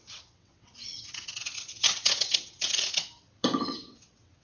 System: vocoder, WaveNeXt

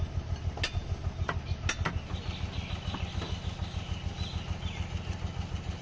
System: none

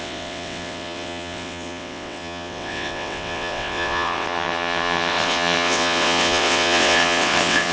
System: vocoder, WaveNeXt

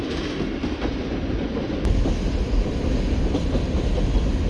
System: none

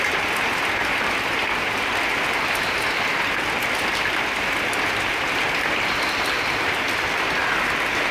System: vocoder, BigVGAN v2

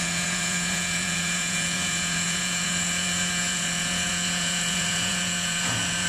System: vocoder, Vocos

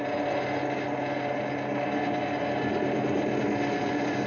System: none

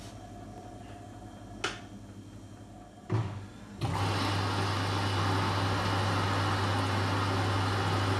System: none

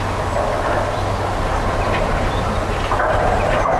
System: none